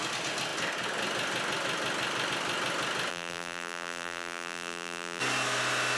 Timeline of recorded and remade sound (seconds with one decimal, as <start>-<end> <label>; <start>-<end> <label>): 0.0-3.1 recorded; 3.1-5.2 remade; 5.2-6.0 recorded